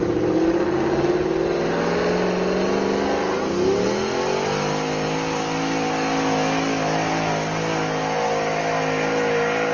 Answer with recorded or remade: recorded